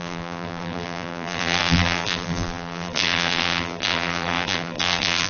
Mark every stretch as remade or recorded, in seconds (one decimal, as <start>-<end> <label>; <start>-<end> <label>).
0.0-5.3 remade

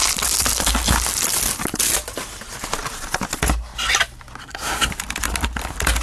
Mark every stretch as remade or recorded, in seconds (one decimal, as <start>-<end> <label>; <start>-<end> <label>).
0.0-4.4 recorded; 4.4-4.9 remade; 4.9-6.0 recorded

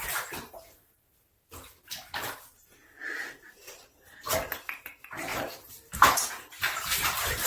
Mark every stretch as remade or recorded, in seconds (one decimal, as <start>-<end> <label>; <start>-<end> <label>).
0.0-5.3 recorded; 5.3-7.5 remade

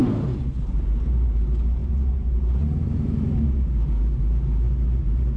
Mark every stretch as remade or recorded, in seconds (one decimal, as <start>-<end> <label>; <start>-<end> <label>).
0.0-0.6 recorded; 0.6-5.4 remade

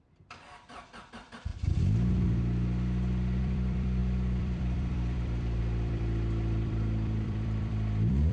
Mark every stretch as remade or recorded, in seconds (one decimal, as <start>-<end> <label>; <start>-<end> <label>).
0.0-1.5 remade; 1.5-3.4 recorded; 3.4-8.3 remade

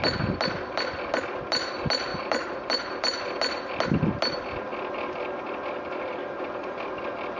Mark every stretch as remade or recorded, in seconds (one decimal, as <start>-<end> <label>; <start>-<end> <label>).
0.0-2.1 recorded; 2.1-3.0 remade; 3.0-4.7 recorded; 4.7-6.0 remade; 6.0-7.4 recorded

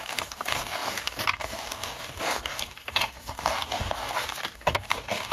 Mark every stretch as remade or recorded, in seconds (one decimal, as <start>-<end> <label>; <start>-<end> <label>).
0.0-5.3 remade

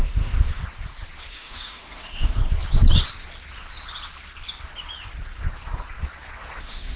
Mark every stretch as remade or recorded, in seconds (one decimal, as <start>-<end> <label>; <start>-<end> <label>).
0.0-0.6 remade; 0.6-1.3 recorded; 1.3-2.4 remade; 2.4-6.6 recorded; 6.6-7.0 remade